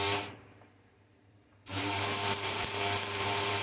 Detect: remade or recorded remade